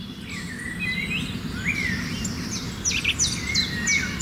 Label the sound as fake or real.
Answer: real